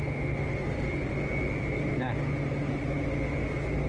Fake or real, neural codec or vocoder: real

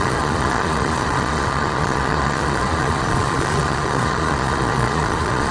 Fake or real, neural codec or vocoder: fake, vocoder, Vocos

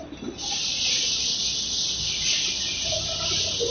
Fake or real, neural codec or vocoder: real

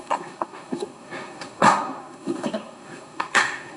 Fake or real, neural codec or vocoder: fake, codec, SNAC